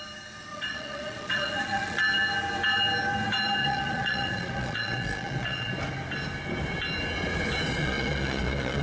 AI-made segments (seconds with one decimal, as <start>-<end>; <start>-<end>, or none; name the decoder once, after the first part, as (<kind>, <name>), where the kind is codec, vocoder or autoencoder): 0.5-2.0 (vocoder, Vocos); 3.6-5.7; 7.8-8.8